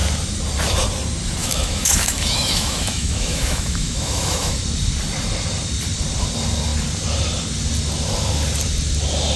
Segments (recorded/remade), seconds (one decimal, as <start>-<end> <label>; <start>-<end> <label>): 0.0-1.4 recorded; 1.4-4.6 remade; 4.6-9.4 recorded